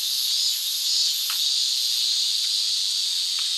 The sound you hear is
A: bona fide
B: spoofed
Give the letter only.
A